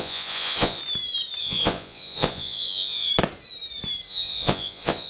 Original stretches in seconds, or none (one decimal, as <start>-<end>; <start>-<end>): 0.8-1.4; 3.1-4.1

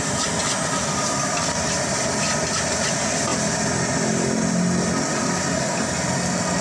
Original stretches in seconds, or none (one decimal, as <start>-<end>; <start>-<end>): 0.0-6.6

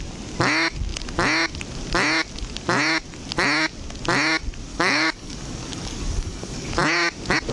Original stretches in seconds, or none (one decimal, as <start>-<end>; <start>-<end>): 0.0-4.7; 6.7-7.5

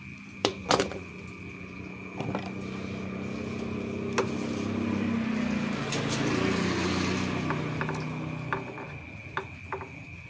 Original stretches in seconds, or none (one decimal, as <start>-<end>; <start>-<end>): 0.0-0.4; 1.1-10.3

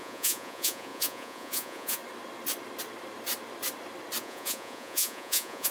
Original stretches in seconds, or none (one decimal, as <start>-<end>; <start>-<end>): 2.0-4.2

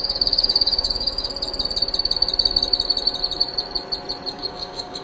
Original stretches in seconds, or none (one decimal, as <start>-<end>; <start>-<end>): 1.3-4.3

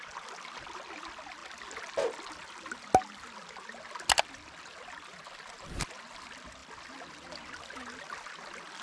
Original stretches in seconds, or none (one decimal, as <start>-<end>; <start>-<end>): 0.0-8.8

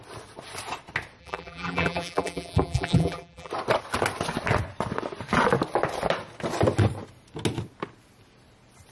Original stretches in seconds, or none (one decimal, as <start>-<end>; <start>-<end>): 0.0-1.2; 3.5-8.9